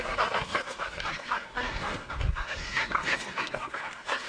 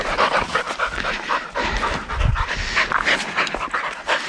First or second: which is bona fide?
second